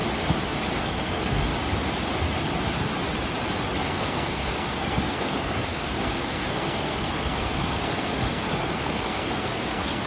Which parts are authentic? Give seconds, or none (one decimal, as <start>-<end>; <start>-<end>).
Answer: 0.0-0.8; 1.5-3.8